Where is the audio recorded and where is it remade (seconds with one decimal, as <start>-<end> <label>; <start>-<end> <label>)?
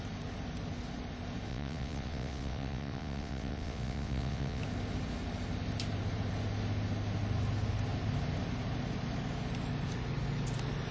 0.0-1.5 recorded; 1.5-4.6 remade; 4.6-10.9 recorded